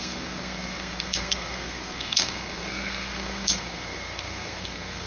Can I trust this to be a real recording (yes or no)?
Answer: no